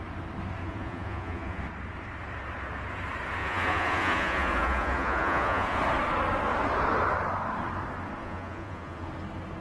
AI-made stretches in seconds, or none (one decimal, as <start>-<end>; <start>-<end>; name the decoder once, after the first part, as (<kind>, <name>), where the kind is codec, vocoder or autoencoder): 0.6-1.6 (vocoder, Vocos); 3.4-5.8; 8.2-9.1